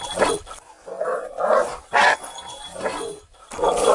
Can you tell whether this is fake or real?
real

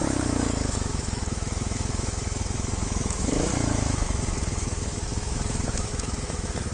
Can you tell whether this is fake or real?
fake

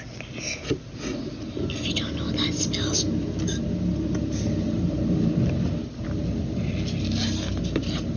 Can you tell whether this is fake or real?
real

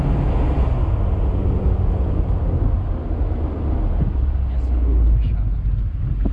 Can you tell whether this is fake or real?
real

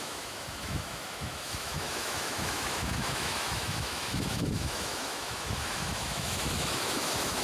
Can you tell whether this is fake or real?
fake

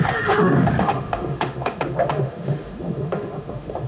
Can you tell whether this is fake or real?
fake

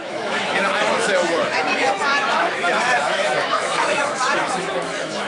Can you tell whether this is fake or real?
fake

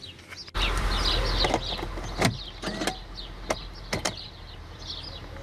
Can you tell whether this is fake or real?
real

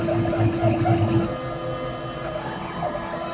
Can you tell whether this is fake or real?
real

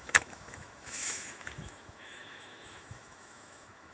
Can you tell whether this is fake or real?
fake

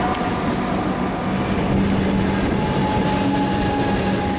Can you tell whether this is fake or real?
real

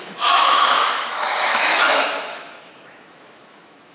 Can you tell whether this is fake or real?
fake